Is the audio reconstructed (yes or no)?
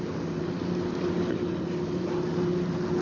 no